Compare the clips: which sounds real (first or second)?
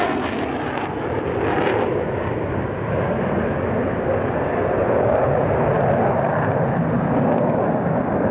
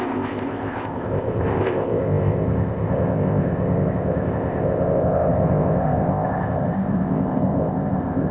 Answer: first